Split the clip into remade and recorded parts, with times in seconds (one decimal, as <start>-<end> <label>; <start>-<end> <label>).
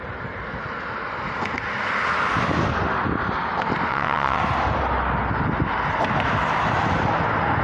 0.0-3.9 recorded; 3.9-4.4 remade; 4.4-7.6 recorded